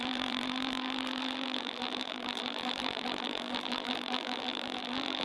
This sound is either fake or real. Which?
fake